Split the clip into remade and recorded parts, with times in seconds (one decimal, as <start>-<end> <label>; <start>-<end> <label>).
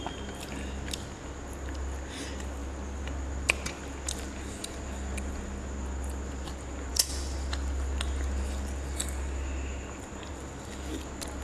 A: 0.0-11.4 recorded